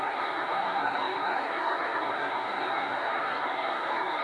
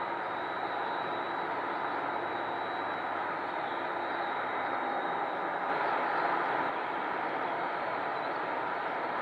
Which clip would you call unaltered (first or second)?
second